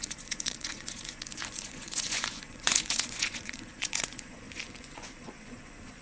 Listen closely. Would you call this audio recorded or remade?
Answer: remade